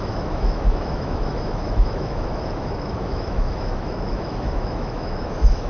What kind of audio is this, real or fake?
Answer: fake